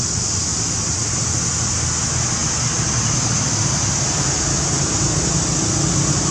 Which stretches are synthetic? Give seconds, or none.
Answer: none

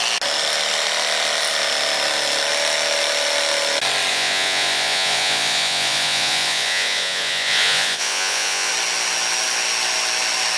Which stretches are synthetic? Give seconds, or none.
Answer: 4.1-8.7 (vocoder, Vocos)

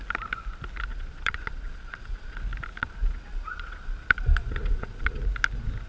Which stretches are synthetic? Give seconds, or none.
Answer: 0.9-2.4 (vocoder, Vocos); 2.8-5.2

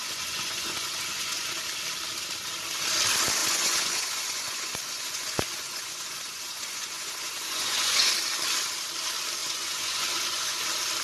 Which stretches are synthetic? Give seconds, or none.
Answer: 0.0-1.6 (vocoder, Vocos); 3.4-8.1; 9.4-10.6

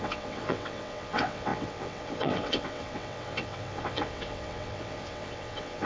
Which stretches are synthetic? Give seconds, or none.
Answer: 0.0-5.9 (vocoder, WaveNeXt)

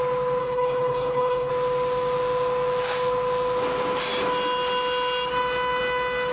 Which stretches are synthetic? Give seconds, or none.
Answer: 0.4-1.5 (codec, HILCodec)